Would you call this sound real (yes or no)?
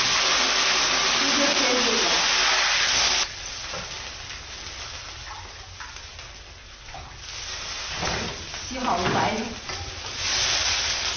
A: yes